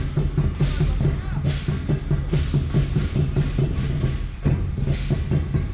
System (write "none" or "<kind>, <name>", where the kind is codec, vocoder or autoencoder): none